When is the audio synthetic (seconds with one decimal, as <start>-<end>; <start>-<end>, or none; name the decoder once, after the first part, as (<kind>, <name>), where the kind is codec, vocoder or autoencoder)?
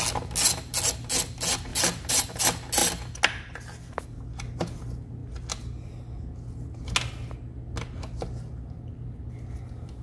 1.7-2.4 (vocoder, BigVGAN v2)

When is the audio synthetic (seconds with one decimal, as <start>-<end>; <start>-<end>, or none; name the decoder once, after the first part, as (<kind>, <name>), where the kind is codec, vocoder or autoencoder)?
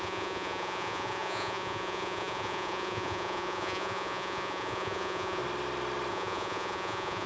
0.0-5.4 (vocoder, Vocos); 6.1-7.3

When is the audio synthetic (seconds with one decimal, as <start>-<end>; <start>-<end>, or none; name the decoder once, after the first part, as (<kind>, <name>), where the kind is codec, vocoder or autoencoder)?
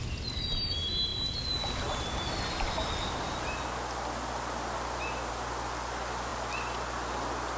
none